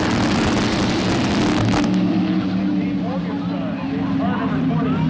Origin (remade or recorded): recorded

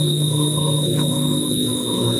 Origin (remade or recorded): remade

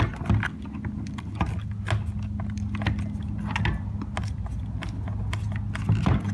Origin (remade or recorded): recorded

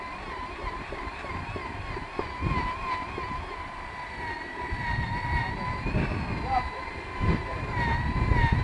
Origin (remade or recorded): remade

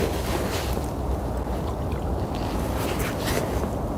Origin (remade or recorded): recorded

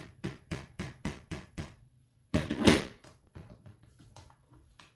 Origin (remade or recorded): remade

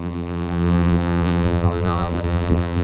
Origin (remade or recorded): remade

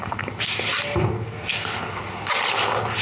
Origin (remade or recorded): recorded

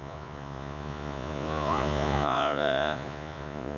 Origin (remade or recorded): remade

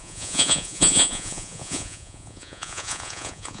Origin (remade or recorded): remade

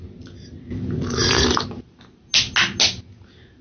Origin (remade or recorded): recorded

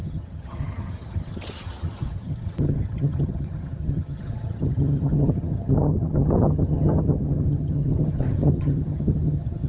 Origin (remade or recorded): remade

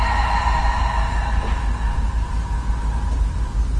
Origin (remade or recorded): recorded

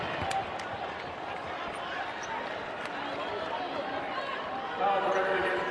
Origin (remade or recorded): recorded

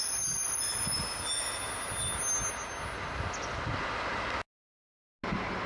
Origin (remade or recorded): recorded